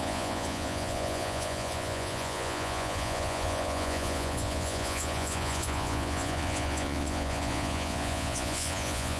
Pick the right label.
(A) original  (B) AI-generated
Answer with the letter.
B